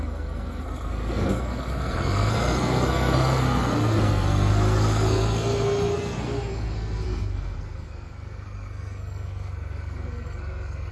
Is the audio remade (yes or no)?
yes